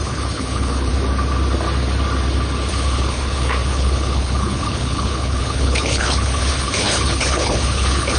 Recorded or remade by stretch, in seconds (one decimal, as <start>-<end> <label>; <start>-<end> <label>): 0.0-0.9 remade; 0.9-2.7 recorded; 2.7-8.2 remade